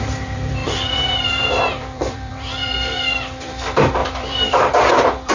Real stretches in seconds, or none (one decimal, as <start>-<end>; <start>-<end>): none